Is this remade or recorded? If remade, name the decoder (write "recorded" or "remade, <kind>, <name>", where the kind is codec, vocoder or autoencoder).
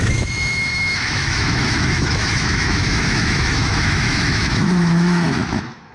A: remade, autoencoder, DAC-VAE